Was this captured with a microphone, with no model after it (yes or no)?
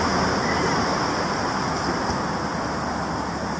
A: yes